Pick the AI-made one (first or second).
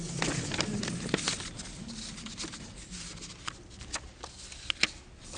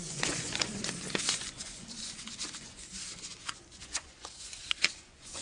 second